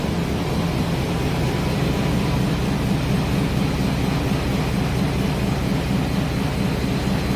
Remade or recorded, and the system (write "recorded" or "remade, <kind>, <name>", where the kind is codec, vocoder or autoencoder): recorded